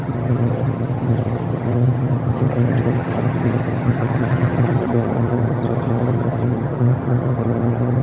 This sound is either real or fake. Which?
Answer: fake